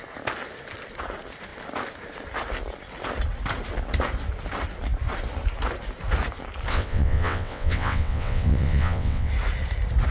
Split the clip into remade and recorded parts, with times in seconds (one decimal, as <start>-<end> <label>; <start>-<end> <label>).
0.0-6.7 recorded; 6.7-9.3 remade; 9.3-10.1 recorded